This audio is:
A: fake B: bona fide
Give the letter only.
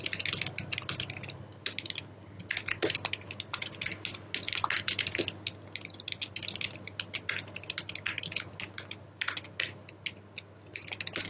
B